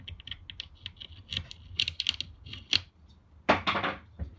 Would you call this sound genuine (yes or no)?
yes